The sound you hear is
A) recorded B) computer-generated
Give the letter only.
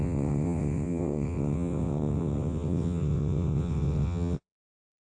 B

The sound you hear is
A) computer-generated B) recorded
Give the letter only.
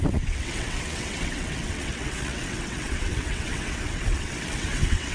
A